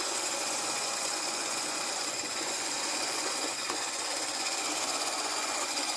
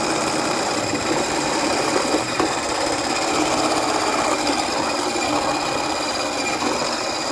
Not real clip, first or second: first